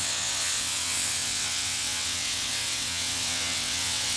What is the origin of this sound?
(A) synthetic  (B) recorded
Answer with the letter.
A